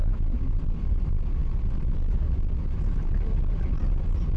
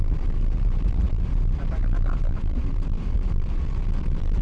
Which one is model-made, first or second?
second